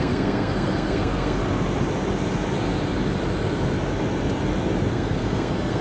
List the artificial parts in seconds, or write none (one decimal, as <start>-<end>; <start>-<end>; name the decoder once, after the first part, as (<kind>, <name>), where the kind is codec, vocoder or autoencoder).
0.0-1.4 (codec, SNAC); 4.9-5.8